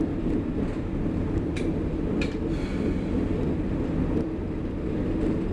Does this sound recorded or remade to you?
recorded